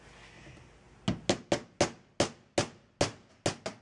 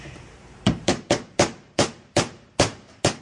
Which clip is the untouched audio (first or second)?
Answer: first